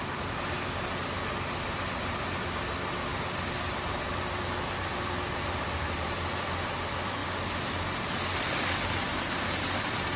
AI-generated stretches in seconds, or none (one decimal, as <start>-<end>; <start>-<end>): none